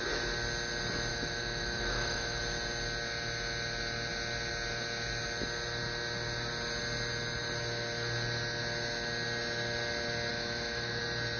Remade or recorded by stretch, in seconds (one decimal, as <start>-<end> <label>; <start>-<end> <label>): 0.0-1.1 recorded; 1.1-2.4 remade; 2.4-10.3 recorded; 10.3-11.0 remade; 11.0-11.4 recorded